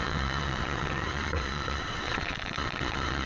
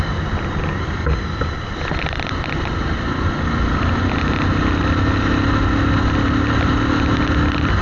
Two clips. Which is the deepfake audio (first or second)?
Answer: first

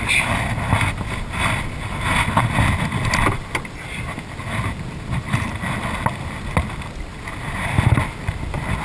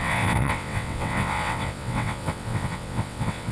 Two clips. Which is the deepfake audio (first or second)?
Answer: second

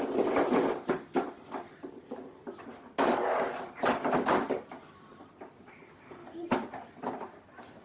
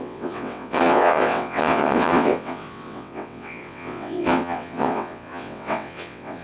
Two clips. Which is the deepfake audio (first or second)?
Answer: second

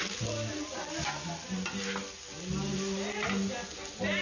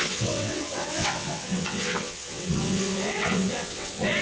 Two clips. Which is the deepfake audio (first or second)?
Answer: second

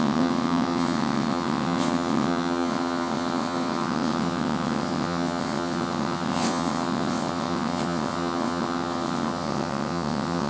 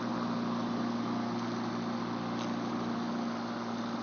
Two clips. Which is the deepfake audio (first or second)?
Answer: first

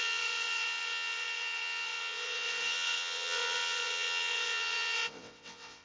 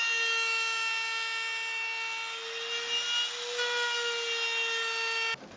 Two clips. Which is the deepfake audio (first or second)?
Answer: first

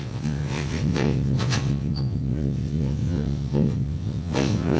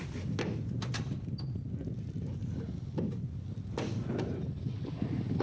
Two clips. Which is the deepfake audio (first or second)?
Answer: first